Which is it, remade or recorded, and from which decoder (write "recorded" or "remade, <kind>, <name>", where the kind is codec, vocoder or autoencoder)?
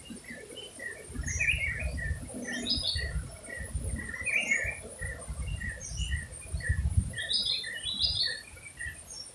recorded